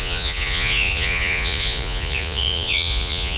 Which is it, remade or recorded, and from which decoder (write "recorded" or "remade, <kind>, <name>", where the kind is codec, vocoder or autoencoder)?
remade, vocoder, Vocos